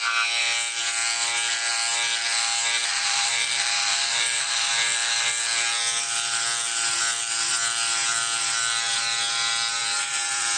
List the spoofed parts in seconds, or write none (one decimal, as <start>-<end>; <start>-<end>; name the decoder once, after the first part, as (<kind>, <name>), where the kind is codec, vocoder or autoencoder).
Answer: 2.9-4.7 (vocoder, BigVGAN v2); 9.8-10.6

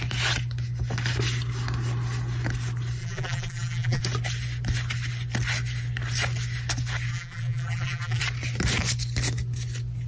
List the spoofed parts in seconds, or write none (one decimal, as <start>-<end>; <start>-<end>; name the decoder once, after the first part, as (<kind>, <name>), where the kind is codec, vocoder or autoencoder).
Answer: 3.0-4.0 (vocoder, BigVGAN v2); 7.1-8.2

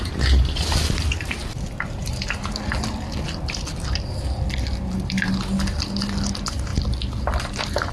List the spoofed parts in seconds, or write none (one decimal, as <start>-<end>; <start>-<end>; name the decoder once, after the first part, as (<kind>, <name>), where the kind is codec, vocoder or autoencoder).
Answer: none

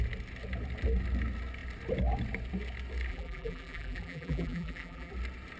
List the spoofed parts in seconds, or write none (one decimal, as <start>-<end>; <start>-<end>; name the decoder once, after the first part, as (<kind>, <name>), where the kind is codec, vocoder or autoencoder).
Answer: 3.1-5.1 (vocoder, BigVGAN v2)

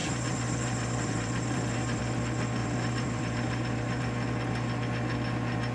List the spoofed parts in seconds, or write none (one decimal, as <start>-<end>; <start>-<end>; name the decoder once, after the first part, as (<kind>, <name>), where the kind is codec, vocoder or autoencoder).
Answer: 0.0-2.0 (vocoder, BigVGAN v2); 2.6-4.0